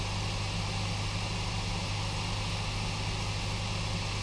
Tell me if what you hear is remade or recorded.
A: recorded